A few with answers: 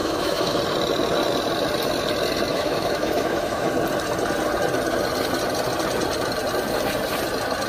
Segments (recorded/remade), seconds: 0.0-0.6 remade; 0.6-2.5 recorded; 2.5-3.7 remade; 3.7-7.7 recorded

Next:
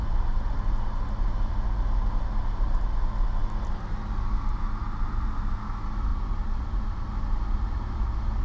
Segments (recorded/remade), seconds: 0.0-6.1 recorded; 6.1-7.1 remade; 7.1-8.4 recorded

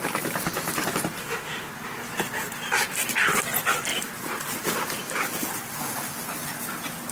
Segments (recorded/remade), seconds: 0.0-1.2 recorded; 1.2-1.7 remade; 1.7-7.1 recorded

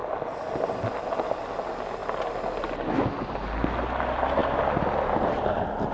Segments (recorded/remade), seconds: 0.0-5.9 recorded

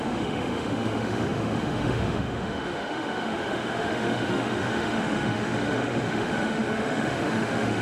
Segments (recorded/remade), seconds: 0.0-7.8 remade

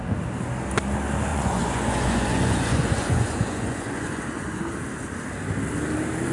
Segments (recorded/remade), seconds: 0.0-1.3 recorded; 1.3-4.6 remade; 4.6-6.3 recorded

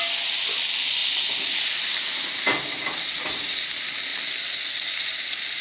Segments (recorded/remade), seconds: 0.0-4.1 recorded; 4.1-5.6 remade

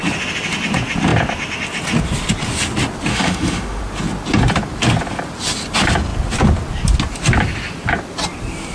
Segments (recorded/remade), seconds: 0.0-3.1 recorded; 3.1-3.8 remade; 3.8-8.7 recorded